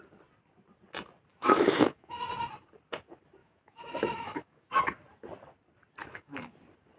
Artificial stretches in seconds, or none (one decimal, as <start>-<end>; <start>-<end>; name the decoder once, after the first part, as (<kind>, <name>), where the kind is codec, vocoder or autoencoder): 1.3-2.2 (autoencoder, DAC-VAE); 3.4-4.8; 6.0-6.6